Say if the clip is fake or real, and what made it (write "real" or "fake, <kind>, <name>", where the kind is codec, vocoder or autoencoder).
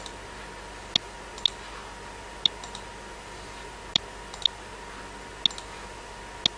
real